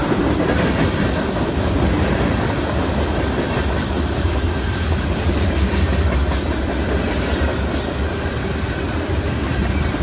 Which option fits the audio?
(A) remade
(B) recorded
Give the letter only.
B